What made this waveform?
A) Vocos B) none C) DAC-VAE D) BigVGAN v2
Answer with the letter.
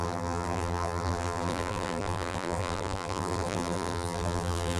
D